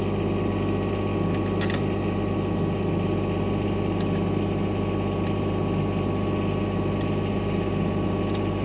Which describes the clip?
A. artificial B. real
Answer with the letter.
B